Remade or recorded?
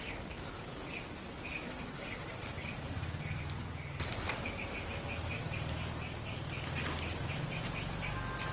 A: recorded